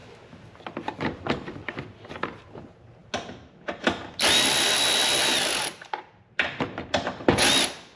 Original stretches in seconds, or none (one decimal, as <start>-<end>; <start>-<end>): 0.0-8.0

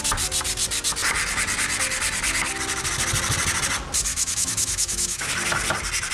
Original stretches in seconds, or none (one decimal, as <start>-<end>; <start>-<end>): 0.0-4.1; 5.3-6.1

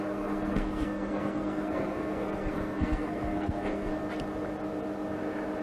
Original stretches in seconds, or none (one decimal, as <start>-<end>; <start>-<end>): 3.9-5.6